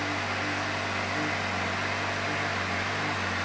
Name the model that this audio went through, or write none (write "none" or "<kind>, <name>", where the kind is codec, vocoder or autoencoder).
none